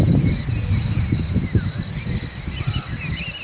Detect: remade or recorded recorded